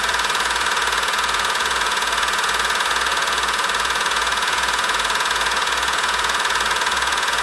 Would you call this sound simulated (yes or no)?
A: yes